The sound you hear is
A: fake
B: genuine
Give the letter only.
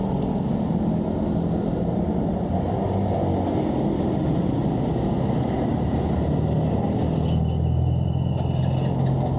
B